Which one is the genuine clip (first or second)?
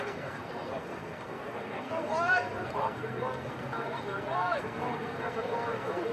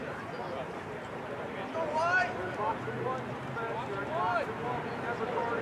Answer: second